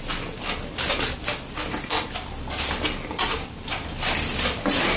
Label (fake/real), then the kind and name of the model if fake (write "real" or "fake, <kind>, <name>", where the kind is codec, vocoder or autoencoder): real